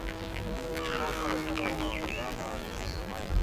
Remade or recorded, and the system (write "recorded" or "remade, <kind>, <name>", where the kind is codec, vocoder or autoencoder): remade, vocoder, BigVGAN v2